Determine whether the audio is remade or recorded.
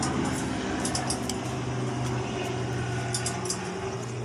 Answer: recorded